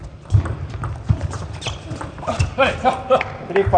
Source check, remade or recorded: recorded